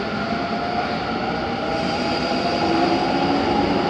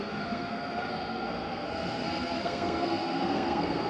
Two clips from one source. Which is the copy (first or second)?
second